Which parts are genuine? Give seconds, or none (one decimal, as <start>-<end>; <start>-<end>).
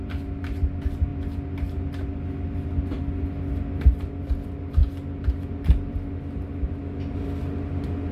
0.0-8.1